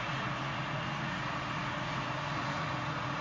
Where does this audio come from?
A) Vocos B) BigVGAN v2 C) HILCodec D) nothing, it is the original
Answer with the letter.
A